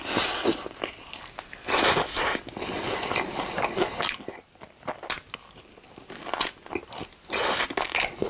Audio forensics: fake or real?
real